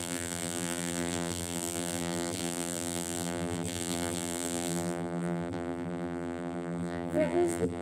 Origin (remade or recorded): remade